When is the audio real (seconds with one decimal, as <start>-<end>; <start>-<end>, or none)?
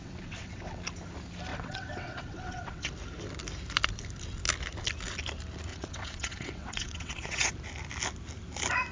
0.8-1.5; 2.9-5.7; 7.5-8.9